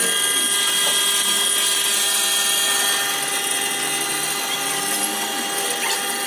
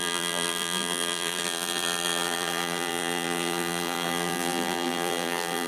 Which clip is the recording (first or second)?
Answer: first